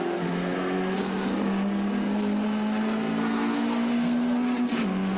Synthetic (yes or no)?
yes